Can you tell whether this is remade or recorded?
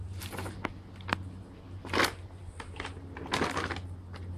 recorded